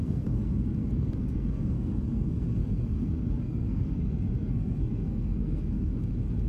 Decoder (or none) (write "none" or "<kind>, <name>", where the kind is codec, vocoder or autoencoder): codec, SNAC